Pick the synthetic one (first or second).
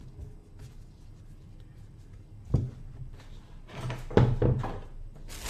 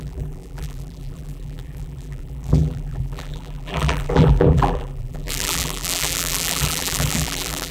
second